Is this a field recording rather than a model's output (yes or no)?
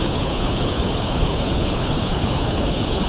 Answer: no